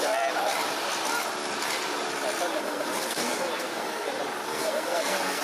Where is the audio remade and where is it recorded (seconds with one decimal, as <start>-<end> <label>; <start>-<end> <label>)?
0.0-2.6 recorded; 2.6-4.1 remade; 4.1-4.5 recorded; 4.5-5.4 remade